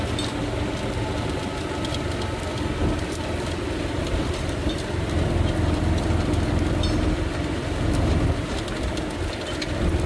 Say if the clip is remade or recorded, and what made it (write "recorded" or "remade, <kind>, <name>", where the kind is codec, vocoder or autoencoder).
recorded